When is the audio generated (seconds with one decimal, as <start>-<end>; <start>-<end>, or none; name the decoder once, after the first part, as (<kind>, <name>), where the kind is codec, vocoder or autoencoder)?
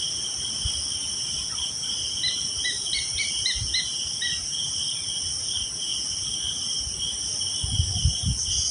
none